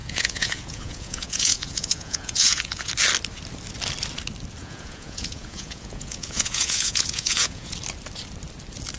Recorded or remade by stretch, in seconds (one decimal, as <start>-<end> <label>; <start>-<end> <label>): 0.0-2.9 remade; 2.9-4.6 recorded; 4.6-7.7 remade; 7.7-9.0 recorded